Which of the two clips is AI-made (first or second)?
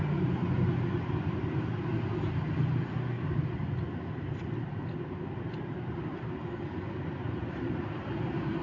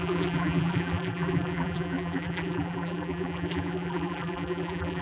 second